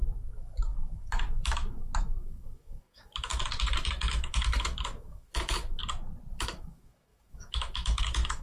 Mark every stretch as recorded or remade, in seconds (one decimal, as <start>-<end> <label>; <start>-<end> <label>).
0.0-3.3 remade; 3.3-3.9 recorded; 3.9-5.8 remade; 5.8-6.3 recorded; 6.3-8.4 remade